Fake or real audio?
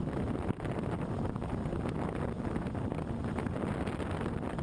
real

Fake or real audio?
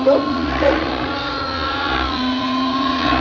fake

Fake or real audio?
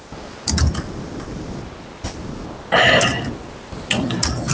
real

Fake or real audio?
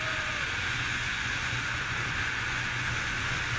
fake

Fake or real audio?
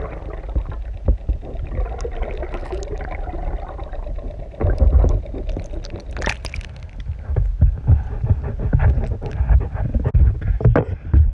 real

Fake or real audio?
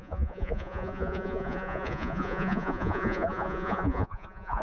fake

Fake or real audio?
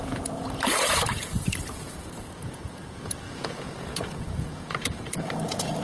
fake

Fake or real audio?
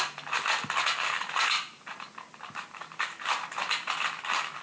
real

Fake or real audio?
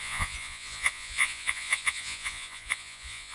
fake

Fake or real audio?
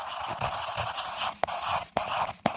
real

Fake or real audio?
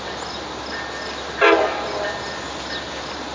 real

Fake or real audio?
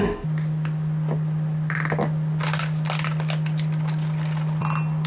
real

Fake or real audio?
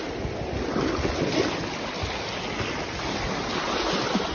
real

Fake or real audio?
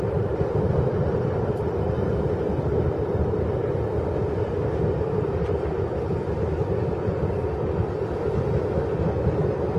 real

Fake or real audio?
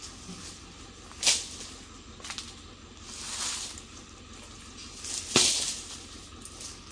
real